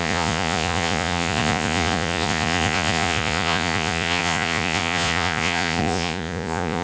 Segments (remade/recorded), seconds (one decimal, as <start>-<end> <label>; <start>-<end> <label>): 0.0-6.8 remade